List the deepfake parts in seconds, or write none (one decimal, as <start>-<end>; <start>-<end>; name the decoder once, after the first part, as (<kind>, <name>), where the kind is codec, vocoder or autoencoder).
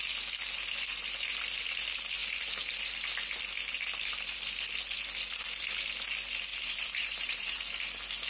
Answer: 6.5-7.8 (vocoder, BigVGAN v2)